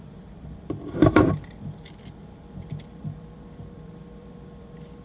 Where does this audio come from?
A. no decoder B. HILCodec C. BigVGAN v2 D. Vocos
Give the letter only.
C